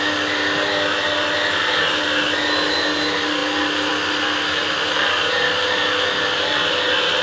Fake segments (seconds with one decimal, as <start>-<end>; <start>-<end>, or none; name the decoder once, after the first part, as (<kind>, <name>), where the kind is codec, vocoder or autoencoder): none